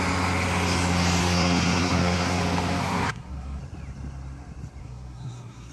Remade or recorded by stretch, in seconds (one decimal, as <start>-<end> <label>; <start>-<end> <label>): 0.0-1.2 recorded; 1.2-2.4 remade; 2.4-2.8 recorded; 2.8-3.6 remade; 3.6-4.8 recorded; 4.8-5.7 remade